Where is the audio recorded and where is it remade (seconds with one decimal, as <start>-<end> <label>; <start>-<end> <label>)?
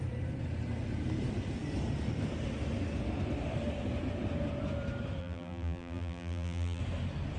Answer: 0.0-5.2 recorded; 5.2-6.8 remade; 6.8-7.4 recorded